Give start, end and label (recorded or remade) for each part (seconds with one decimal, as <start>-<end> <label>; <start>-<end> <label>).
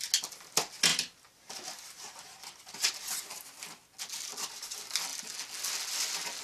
0.0-6.4 recorded